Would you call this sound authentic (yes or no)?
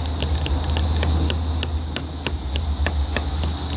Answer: yes